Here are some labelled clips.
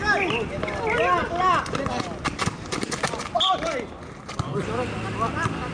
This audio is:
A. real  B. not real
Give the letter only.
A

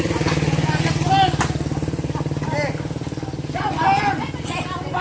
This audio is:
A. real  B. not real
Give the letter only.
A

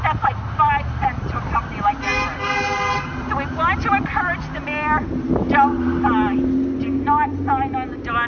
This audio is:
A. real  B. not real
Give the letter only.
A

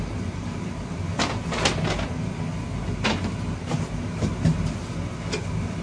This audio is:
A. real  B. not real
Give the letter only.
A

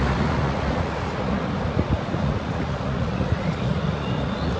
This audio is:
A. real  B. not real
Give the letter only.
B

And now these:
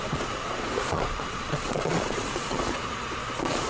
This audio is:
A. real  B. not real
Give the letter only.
B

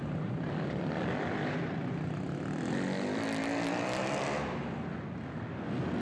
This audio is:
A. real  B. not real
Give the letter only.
A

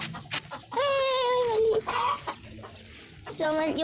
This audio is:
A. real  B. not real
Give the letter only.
A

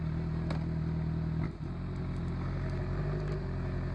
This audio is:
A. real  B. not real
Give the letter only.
A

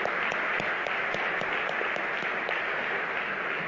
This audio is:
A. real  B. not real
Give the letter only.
A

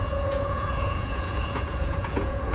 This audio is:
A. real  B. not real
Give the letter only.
B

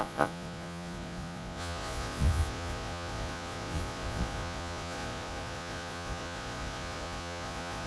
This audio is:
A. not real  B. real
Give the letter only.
A